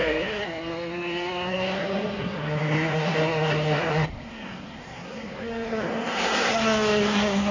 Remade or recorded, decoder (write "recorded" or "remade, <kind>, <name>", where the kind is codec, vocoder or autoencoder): remade, codec, SNAC